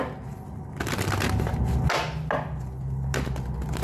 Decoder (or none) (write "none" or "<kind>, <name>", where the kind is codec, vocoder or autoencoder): none